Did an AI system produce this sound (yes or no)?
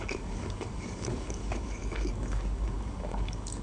yes